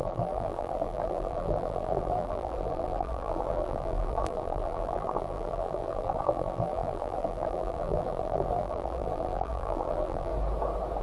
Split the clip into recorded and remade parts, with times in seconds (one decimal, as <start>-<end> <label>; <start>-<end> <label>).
0.0-10.3 remade; 10.3-11.0 recorded